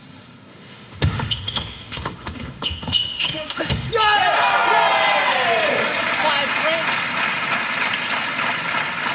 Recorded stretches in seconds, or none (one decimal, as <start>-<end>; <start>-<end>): 0.0-0.5; 3.9-9.1